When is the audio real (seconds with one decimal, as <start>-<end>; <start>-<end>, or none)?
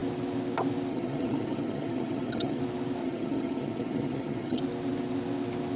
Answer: 0.0-0.9; 2.6-3.0; 4.6-5.8